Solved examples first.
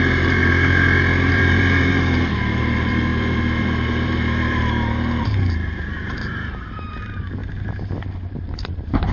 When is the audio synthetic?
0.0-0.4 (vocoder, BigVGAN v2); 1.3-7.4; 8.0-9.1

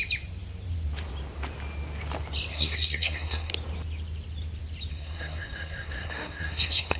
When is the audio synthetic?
2.5-3.5 (codec, SNAC); 4.9-7.0

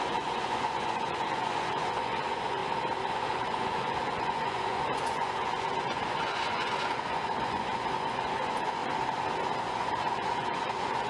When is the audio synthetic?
0.0-2.6 (vocoder, Vocos); 3.1-8.8; 9.6-11.1

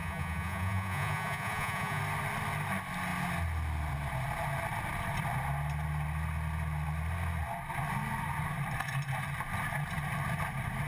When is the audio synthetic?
0.0-2.0 (vocoder, Vocos)